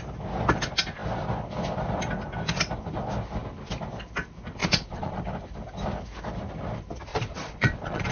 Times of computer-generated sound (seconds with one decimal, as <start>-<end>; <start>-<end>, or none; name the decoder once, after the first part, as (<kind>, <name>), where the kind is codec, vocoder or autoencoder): 4.6-5.2 (vocoder, Vocos); 7.1-8.1